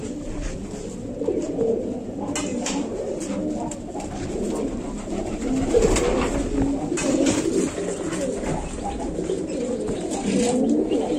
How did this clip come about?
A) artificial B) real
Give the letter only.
B